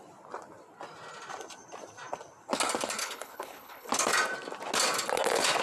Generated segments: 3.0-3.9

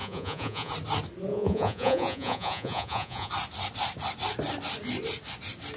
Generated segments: 0.0-0.7; 1.3-3.3

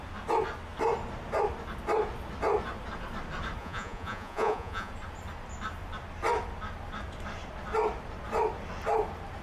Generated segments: 3.6-4.9

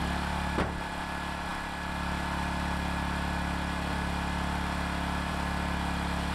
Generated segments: none

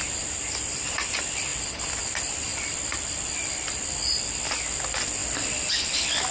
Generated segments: 1.5-2.0; 2.5-3.8

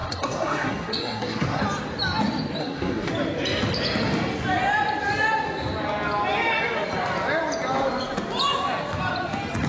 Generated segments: 0.0-1.6; 2.6-3.1